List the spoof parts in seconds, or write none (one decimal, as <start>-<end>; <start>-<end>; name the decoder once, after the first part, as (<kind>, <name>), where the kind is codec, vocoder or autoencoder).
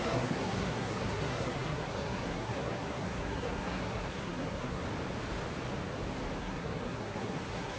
0.0-4.8 (codec, SNAC); 6.4-7.8